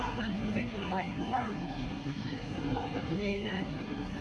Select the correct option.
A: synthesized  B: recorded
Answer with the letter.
A